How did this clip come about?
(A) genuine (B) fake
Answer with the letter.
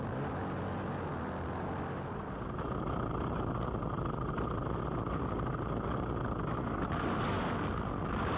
A